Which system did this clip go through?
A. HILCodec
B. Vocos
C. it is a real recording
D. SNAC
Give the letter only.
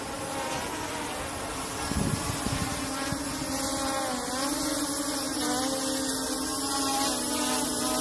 C